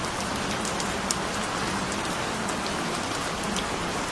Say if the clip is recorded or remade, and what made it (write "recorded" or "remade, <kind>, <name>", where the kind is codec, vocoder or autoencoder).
recorded